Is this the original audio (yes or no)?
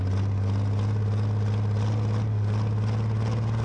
yes